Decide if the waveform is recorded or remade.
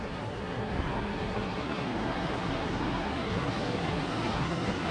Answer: remade